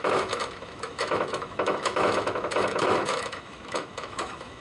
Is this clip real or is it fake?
fake